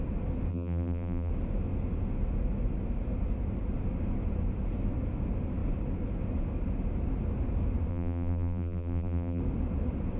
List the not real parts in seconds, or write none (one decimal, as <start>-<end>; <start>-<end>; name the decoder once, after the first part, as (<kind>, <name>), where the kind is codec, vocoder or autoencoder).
0.5-1.3 (vocoder, BigVGAN v2); 7.9-9.4